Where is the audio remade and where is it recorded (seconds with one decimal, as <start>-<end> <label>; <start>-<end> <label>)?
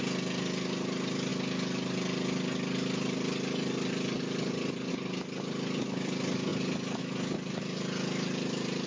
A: 0.0-8.9 recorded